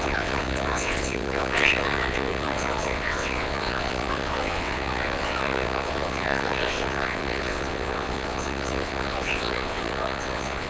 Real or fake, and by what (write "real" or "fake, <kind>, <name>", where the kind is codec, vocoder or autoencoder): fake, vocoder, WaveNeXt